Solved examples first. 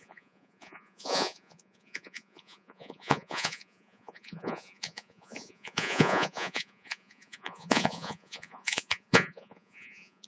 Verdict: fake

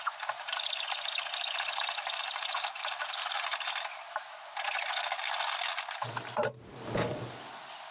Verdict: real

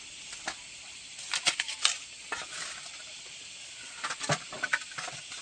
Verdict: real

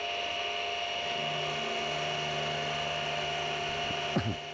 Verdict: real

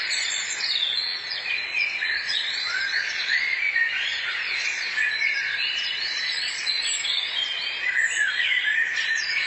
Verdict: fake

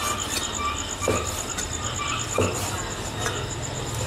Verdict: real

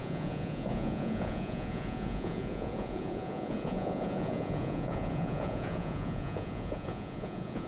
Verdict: fake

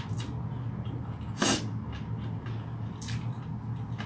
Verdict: real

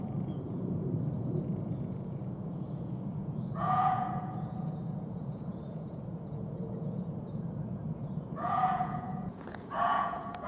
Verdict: fake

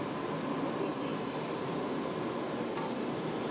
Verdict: real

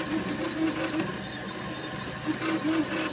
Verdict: real